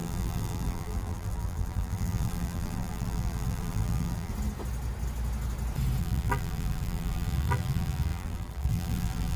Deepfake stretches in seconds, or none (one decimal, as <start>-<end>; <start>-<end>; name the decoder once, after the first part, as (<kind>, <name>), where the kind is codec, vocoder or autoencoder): 0.0-4.3 (vocoder, BigVGAN v2); 6.0-9.4